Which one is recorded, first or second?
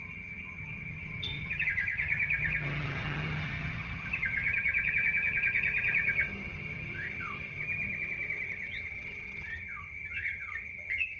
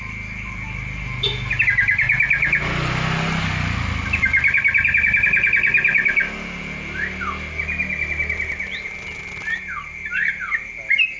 second